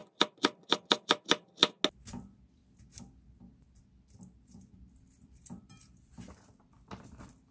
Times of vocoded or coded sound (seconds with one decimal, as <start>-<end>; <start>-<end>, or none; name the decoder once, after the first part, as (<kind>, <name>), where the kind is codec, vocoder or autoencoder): 1.0-1.6 (vocoder, BigVGAN v2); 5.2-7.5